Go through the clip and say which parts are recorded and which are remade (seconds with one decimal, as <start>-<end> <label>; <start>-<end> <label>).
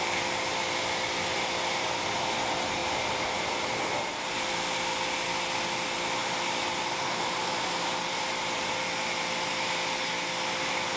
0.0-2.8 recorded; 2.8-3.7 remade; 3.7-6.2 recorded; 6.2-8.7 remade; 8.7-11.0 recorded